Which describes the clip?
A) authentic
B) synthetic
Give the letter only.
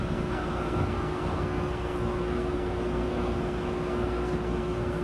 B